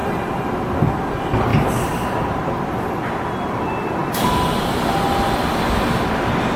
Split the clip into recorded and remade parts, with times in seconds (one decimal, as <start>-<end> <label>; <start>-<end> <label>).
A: 0.0-0.7 remade; 0.7-1.5 recorded; 1.5-2.6 remade; 2.6-6.6 recorded